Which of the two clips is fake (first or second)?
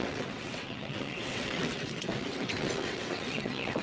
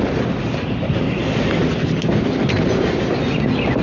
first